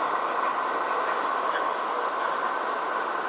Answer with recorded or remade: recorded